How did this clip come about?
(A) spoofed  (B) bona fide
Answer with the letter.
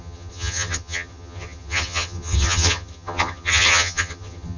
A